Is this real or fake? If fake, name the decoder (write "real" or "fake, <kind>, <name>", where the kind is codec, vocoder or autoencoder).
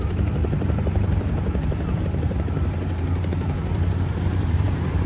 fake, vocoder, BigVGAN v2